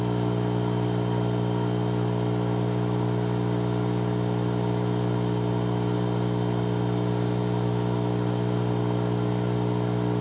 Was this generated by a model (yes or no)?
no